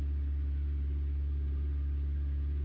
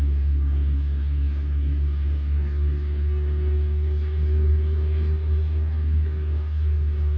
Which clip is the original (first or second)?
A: first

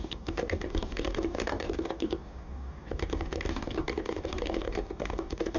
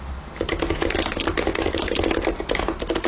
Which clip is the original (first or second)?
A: second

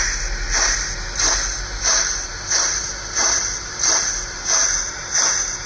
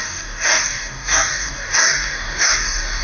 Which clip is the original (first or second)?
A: first